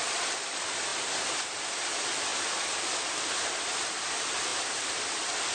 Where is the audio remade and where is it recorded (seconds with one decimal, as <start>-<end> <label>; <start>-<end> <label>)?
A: 0.0-0.9 recorded; 0.9-1.9 remade; 1.9-5.5 recorded